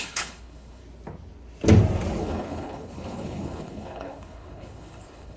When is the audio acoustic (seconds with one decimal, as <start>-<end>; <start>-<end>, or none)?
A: 0.8-2.2